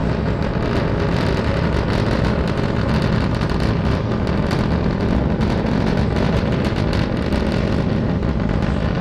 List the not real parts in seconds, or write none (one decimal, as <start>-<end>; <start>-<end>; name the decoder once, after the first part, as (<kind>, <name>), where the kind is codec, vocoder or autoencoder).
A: 1.1-9.0 (vocoder, BigVGAN v2)